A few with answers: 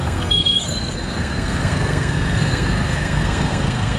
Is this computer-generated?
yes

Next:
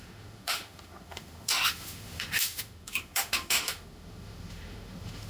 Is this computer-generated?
yes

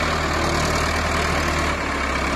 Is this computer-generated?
no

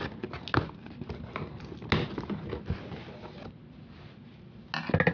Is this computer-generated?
no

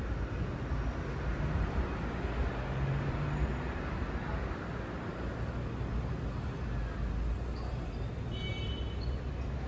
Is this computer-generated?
no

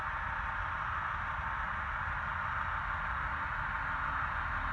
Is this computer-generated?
no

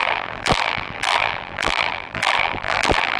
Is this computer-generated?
yes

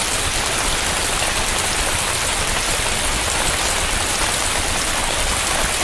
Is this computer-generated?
no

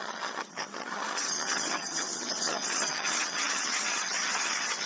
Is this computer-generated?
yes